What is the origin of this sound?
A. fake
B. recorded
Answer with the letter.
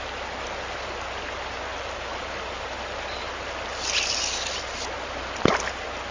B